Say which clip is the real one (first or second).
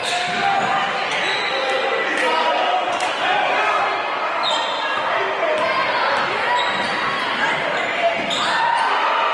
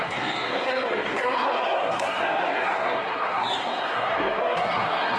first